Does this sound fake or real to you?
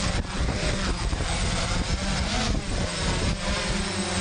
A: real